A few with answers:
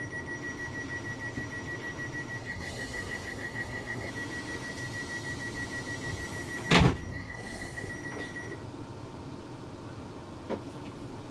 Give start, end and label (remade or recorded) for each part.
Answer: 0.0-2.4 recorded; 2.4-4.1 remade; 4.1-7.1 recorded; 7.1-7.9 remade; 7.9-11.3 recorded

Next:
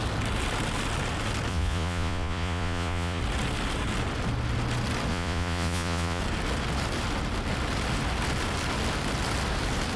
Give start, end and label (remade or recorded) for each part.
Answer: 0.0-1.5 recorded; 1.5-3.2 remade; 3.2-5.1 recorded; 5.1-6.2 remade; 6.2-10.0 recorded

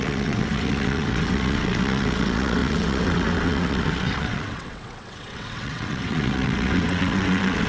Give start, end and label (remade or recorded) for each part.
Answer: 0.0-7.7 remade

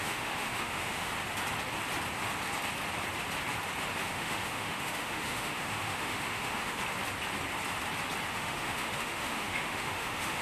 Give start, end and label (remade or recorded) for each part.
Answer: 0.0-1.1 remade; 1.1-4.0 recorded; 4.0-6.8 remade; 6.8-8.3 recorded; 8.3-10.4 remade